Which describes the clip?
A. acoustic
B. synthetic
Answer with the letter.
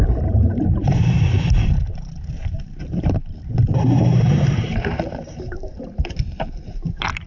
B